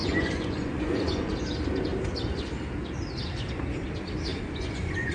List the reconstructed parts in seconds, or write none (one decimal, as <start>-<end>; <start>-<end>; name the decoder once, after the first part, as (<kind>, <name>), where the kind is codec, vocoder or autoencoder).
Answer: 0.0-1.3 (vocoder, Vocos); 4.3-5.1